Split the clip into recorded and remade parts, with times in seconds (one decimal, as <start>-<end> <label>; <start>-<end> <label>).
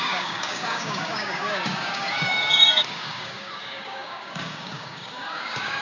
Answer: 0.0-5.8 remade